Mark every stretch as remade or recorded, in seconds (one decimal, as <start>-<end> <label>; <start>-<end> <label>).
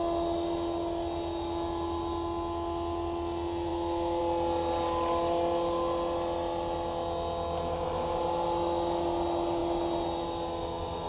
0.0-3.7 recorded; 3.7-4.2 remade; 4.2-11.1 recorded